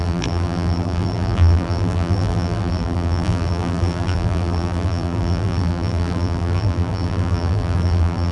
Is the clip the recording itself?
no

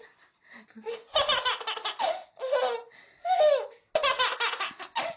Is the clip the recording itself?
yes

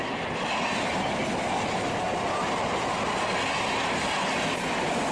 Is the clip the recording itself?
yes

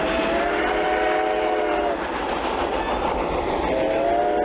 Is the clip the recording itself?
yes